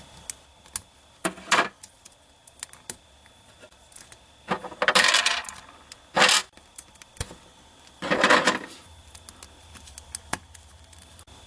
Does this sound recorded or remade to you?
recorded